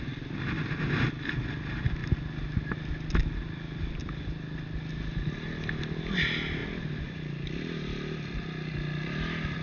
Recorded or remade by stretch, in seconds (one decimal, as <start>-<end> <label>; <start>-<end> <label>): 0.0-9.6 recorded